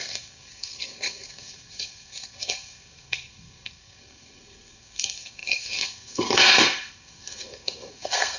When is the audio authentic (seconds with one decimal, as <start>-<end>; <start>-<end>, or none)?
none